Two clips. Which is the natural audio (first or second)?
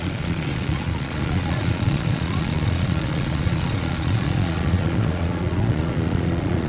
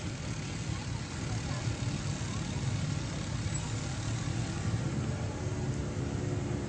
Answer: second